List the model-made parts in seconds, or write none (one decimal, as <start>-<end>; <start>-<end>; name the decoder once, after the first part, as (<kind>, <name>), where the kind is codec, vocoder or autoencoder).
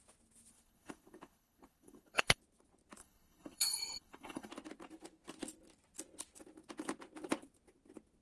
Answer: 0.5-2.4 (codec, HILCodec); 3.0-4.5